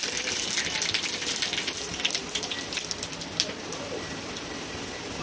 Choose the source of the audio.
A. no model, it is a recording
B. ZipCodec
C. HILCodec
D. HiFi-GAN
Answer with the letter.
A